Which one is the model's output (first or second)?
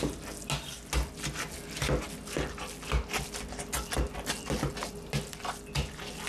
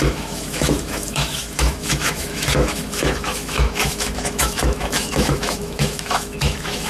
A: second